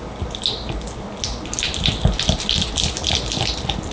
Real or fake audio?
real